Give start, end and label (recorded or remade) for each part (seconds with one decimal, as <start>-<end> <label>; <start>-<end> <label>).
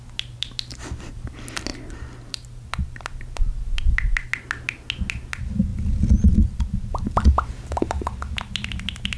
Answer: 0.0-5.7 recorded; 5.7-6.5 remade; 6.5-9.2 recorded